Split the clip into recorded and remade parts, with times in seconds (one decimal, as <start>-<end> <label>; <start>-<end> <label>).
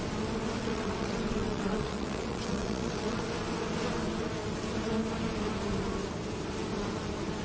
0.0-0.6 recorded; 0.6-3.2 remade; 3.2-7.4 recorded